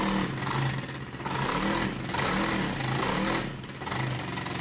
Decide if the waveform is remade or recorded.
recorded